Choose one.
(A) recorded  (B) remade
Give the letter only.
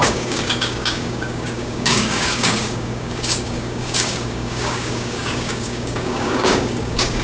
B